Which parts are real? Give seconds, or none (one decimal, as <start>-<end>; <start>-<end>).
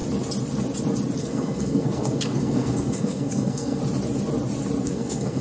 0.0-1.2; 3.8-4.8